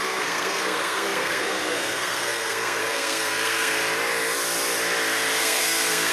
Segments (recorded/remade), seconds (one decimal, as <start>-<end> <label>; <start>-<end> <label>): 0.0-3.8 remade; 3.8-5.4 recorded; 5.4-6.1 remade